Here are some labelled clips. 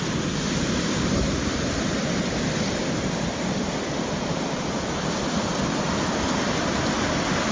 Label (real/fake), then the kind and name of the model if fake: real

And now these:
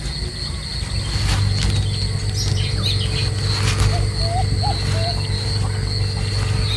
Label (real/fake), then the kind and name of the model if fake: real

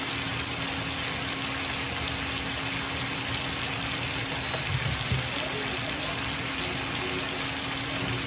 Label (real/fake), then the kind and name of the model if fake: real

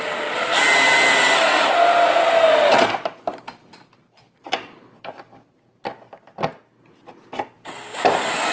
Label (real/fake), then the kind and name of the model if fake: real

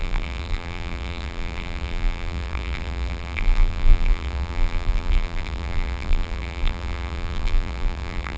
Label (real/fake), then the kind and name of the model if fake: fake, vocoder, BigVGAN v2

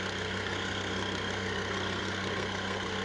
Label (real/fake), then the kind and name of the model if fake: fake, codec, SNAC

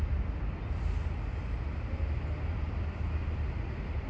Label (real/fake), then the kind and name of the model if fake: real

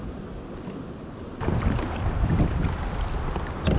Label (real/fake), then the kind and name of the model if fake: real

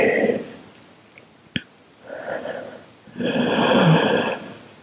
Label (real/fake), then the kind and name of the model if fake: real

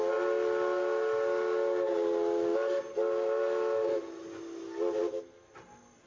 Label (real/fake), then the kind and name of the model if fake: real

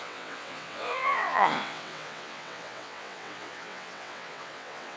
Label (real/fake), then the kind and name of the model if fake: fake, vocoder, WaveNeXt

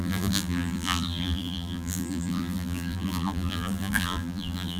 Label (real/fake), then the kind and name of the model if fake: fake, vocoder, BigVGAN v2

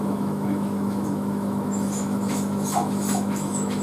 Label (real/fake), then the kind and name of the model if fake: fake, autoencoder, DAC-VAE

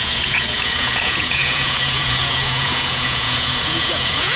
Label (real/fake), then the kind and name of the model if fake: fake, vocoder, Vocos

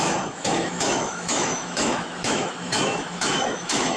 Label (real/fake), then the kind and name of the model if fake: fake, autoencoder, DAC-VAE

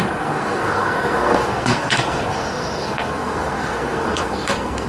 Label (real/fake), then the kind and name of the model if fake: fake, codec, SNAC